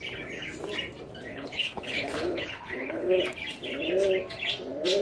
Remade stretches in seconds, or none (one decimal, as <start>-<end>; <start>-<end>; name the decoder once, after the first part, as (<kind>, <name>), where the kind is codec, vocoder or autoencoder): 1.3-3.2 (codec, HILCodec)